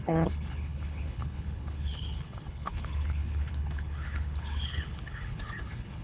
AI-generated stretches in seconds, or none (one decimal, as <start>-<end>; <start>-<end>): 0.0-6.0